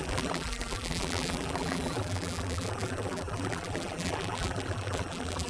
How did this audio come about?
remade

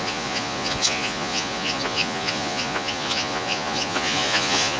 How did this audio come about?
remade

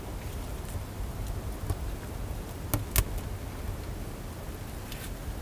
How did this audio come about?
recorded